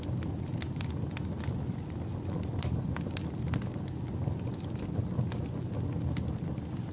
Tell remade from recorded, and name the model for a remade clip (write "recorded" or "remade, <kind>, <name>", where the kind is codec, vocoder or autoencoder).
recorded